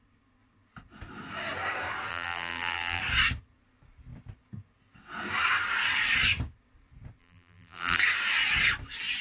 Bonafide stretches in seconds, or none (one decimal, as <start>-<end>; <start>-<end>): 0.0-2.1; 3.0-7.2; 8.0-9.2